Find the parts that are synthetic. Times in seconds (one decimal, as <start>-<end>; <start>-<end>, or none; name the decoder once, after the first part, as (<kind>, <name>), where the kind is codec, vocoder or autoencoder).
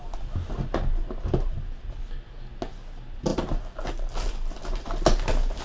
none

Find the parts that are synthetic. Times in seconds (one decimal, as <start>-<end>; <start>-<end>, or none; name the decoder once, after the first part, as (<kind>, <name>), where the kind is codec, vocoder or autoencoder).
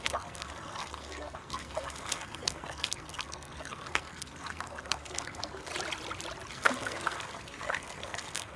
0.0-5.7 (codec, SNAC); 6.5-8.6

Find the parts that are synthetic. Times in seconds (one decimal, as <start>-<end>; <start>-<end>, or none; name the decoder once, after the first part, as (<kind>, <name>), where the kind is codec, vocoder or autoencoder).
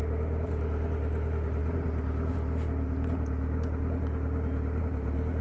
none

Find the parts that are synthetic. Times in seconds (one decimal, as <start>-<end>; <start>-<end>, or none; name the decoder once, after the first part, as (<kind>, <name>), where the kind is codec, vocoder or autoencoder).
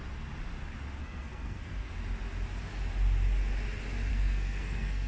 1.0-1.9 (codec, SNAC); 4.1-5.1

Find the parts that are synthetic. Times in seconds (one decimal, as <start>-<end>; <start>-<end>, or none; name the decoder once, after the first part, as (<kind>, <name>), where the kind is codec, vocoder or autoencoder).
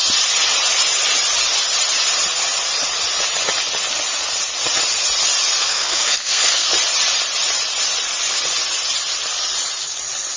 5.6-6.7 (codec, SNAC)